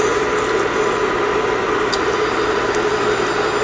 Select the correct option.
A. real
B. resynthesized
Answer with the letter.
A